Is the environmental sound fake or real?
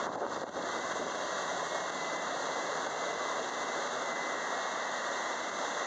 fake